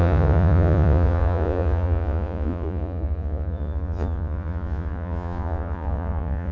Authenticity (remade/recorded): remade